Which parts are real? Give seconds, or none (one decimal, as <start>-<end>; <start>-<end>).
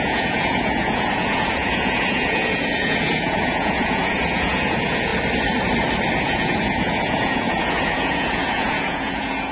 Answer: 5.1-6.2